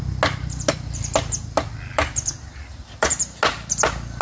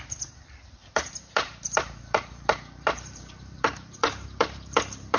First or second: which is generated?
second